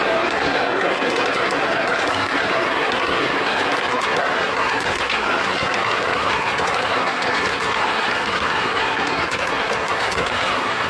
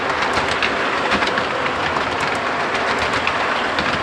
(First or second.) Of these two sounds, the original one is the second